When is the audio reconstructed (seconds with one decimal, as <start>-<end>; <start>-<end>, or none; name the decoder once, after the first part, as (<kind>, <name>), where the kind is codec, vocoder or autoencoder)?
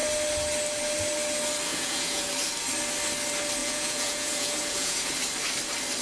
1.7-2.3 (vocoder, Vocos); 3.6-5.1